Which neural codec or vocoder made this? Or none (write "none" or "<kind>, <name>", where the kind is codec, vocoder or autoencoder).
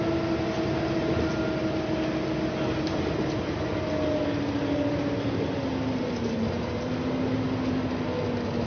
none